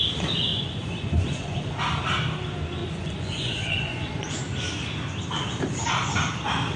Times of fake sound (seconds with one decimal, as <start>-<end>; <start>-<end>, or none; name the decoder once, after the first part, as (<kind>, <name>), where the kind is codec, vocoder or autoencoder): 0.5-1.8 (vocoder, Vocos); 2.8-4.4